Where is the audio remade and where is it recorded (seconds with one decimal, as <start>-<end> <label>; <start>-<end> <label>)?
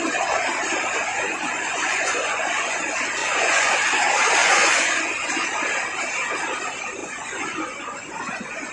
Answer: 0.0-1.1 recorded; 1.1-2.8 remade; 2.8-3.2 recorded; 3.2-3.7 remade; 3.7-4.4 recorded; 4.4-5.3 remade; 5.3-7.0 recorded; 7.0-8.7 remade